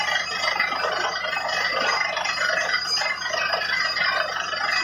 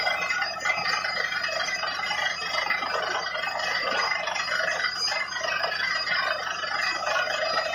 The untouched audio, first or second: first